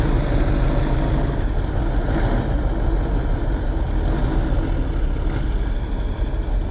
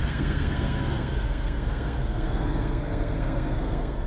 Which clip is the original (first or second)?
first